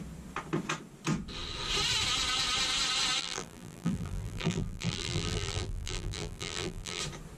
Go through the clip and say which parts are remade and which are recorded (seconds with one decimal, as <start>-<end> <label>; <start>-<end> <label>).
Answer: 0.0-3.2 recorded; 3.2-7.0 remade; 7.0-7.4 recorded